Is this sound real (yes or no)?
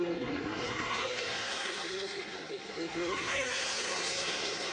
no